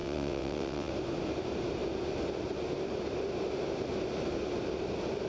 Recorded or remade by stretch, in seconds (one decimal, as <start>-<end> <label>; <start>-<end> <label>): 0.0-0.9 remade; 0.9-5.3 recorded